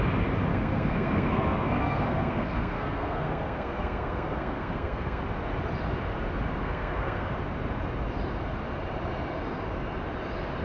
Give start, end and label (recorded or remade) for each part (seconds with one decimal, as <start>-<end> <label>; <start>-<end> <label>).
0.0-0.5 recorded; 0.5-5.2 remade; 5.2-6.6 recorded; 6.6-7.3 remade; 7.3-10.6 recorded